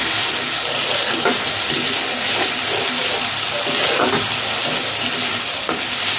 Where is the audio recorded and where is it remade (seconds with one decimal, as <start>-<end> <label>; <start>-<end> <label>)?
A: 0.0-6.2 recorded